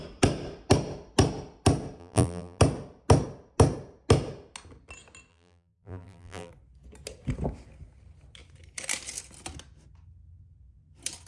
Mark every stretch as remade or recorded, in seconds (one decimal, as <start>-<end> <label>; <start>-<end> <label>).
0.0-2.0 recorded; 2.0-2.6 remade; 2.6-5.3 recorded; 5.3-6.5 remade; 6.5-11.3 recorded